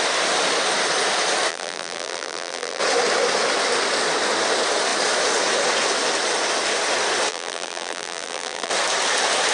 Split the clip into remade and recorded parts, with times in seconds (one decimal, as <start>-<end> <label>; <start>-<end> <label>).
0.0-1.5 recorded; 1.5-2.8 remade; 2.8-7.3 recorded; 7.3-8.7 remade; 8.7-9.5 recorded